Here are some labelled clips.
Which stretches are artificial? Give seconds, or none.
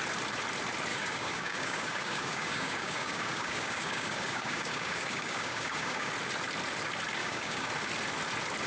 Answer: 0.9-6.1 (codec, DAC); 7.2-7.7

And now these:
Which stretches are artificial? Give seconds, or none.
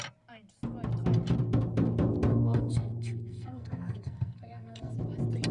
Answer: 2.3-4.9 (codec, SNAC)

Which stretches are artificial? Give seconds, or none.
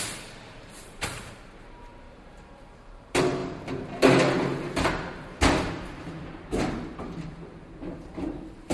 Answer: 0.0-8.7 (vocoder, BigVGAN v2)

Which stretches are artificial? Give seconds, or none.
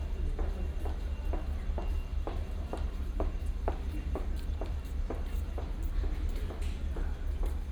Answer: 2.1-6.5 (vocoder, BigVGAN v2)